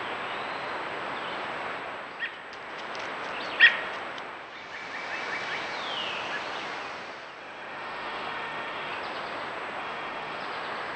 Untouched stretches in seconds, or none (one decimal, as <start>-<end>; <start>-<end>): 0.0-7.4; 8.9-9.8; 10.4-11.0